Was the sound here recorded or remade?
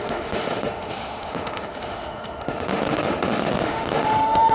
remade